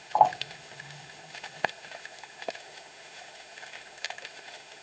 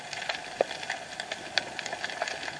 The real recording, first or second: second